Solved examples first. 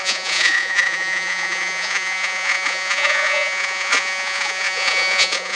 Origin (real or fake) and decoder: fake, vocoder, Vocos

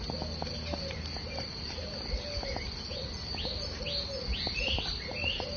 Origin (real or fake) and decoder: real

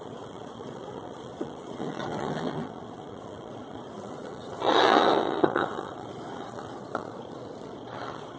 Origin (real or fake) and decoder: fake, vocoder, Vocos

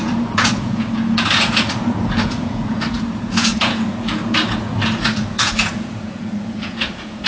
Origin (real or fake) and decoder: fake, vocoder, Vocos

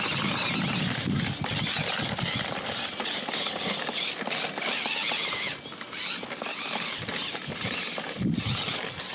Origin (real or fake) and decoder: real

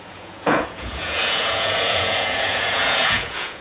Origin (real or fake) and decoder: fake, vocoder, Vocos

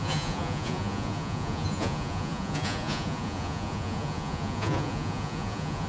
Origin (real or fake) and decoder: fake, vocoder, Vocos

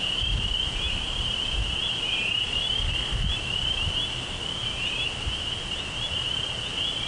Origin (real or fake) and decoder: real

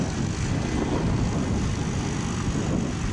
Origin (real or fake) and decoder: real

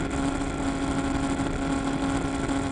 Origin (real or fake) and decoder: real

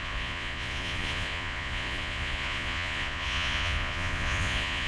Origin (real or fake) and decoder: fake, vocoder, Vocos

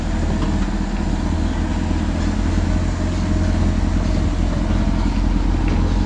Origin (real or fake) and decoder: real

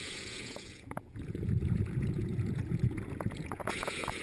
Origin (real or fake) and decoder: fake, vocoder, Vocos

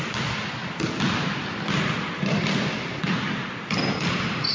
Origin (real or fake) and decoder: real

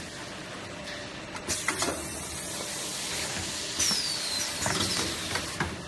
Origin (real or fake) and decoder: real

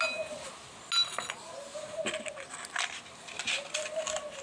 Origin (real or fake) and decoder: real